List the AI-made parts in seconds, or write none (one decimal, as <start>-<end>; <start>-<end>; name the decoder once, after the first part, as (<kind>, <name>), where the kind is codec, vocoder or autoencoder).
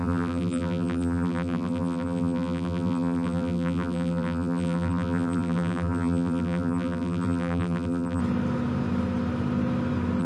0.0-8.2 (vocoder, BigVGAN v2)